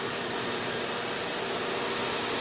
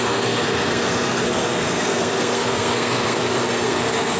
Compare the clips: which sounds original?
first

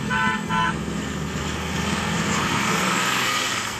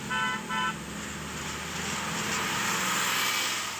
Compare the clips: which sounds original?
second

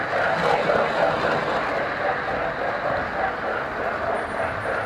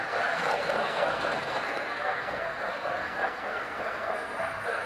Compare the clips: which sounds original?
first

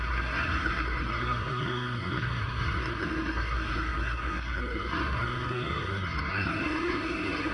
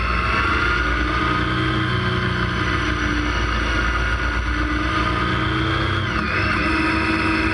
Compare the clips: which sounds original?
second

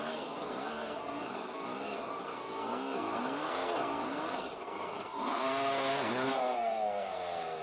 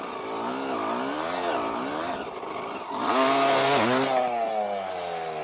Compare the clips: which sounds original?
second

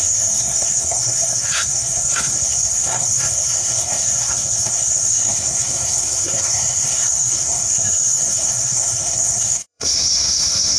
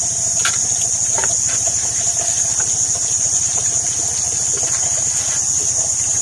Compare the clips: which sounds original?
second